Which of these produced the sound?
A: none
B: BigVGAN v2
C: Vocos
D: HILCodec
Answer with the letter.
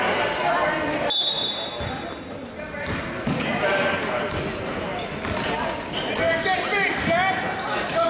A